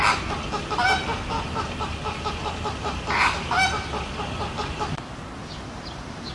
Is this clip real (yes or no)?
yes